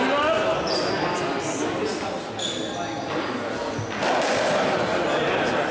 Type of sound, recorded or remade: recorded